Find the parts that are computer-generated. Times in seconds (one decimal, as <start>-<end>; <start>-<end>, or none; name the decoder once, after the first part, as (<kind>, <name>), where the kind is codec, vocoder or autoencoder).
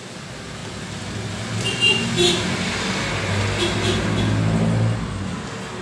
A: none